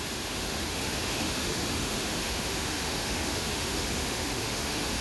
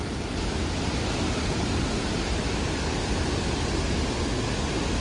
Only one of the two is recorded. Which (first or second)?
second